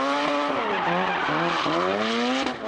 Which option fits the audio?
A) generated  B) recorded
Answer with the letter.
B